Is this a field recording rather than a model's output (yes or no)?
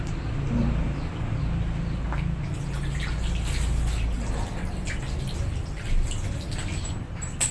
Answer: yes